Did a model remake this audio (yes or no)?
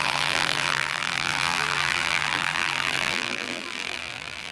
yes